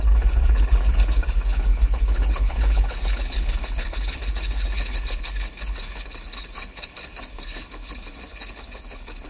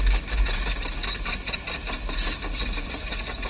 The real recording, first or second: second